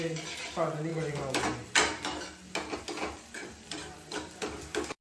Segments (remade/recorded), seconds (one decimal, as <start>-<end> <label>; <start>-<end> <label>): 0.0-0.9 remade; 0.9-2.8 recorded; 2.8-5.0 remade